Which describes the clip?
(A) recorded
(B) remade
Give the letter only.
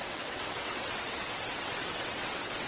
B